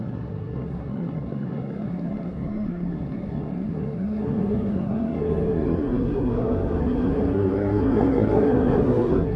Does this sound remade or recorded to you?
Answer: remade